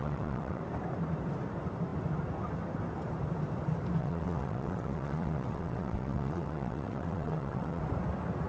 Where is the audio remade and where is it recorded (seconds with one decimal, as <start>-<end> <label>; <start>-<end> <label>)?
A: 0.0-0.6 remade; 0.6-4.0 recorded; 4.0-7.8 remade; 7.8-8.5 recorded